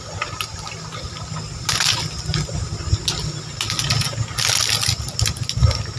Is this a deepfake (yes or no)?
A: no